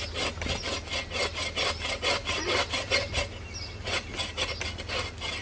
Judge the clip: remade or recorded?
recorded